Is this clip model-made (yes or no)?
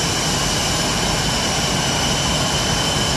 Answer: no